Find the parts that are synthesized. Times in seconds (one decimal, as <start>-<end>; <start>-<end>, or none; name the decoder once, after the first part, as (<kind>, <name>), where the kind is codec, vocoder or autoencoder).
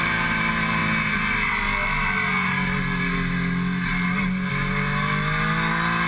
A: none